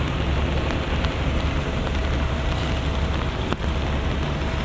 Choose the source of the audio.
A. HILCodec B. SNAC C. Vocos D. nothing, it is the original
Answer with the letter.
D